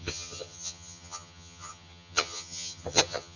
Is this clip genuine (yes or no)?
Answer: no